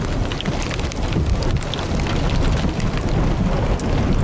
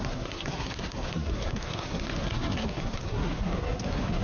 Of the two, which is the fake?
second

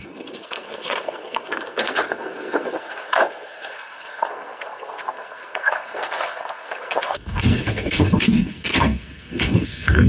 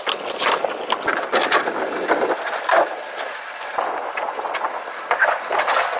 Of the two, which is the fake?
first